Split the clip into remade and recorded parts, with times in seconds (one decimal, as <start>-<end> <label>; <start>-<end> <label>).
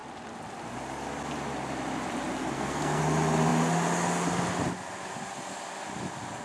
0.0-2.4 recorded; 2.4-3.0 remade; 3.0-6.4 recorded